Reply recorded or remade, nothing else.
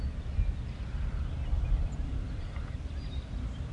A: recorded